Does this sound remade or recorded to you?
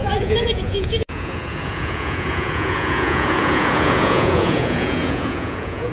remade